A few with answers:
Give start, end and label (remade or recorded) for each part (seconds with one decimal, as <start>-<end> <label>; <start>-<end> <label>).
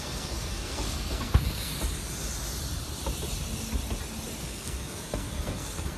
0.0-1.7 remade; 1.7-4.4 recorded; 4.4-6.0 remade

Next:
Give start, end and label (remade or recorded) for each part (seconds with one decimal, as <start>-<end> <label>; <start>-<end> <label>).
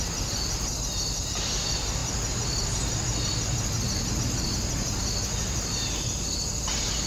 0.0-7.1 recorded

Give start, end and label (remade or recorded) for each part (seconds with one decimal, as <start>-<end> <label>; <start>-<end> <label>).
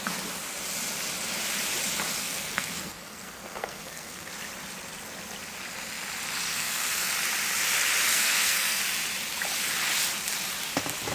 0.0-2.2 recorded; 2.2-4.3 remade; 4.3-6.5 recorded; 6.5-7.1 remade; 7.1-8.1 recorded; 8.1-8.8 remade; 8.8-11.1 recorded